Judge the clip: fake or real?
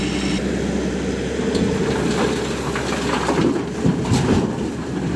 real